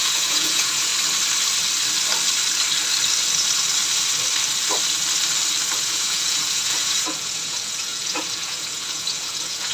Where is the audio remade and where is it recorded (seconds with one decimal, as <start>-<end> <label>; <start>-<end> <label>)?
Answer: 0.0-0.9 remade; 0.9-5.8 recorded; 5.8-9.7 remade